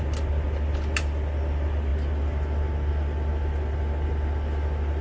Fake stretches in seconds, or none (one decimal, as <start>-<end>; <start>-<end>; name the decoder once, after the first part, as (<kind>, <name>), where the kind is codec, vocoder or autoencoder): none